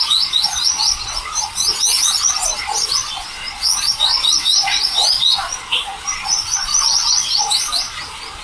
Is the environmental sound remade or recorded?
remade